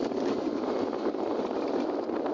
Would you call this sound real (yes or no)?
yes